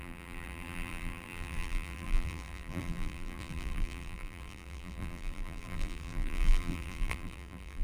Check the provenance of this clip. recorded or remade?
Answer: remade